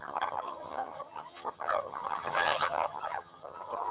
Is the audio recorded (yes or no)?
no